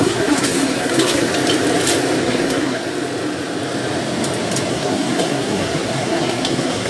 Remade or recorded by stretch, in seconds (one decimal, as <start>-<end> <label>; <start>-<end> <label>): 0.0-1.3 remade; 1.3-2.2 recorded; 2.2-2.9 remade; 2.9-4.7 recorded; 4.7-6.9 remade